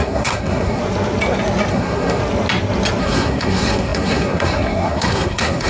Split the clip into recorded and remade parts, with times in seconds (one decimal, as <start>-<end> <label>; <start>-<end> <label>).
0.0-0.8 remade; 0.8-1.7 recorded; 1.7-2.2 remade; 2.2-3.0 recorded; 3.0-5.7 remade